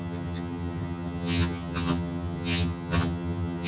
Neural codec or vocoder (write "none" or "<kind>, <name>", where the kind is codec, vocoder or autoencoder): vocoder, HiFi-GAN